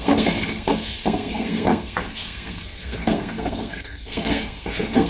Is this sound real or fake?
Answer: fake